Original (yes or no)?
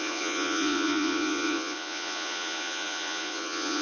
no